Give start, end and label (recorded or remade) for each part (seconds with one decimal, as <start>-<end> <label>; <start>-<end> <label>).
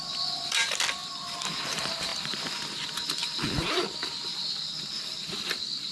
0.0-1.0 remade; 1.0-1.7 recorded; 1.7-5.9 remade